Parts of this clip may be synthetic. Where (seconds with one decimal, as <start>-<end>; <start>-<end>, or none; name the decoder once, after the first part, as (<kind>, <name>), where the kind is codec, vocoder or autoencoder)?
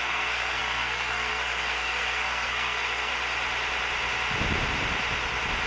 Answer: 0.0-3.1 (codec, SNAC)